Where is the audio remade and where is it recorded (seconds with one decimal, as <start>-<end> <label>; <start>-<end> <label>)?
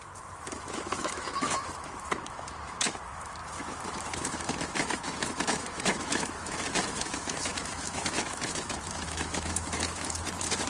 0.0-10.7 remade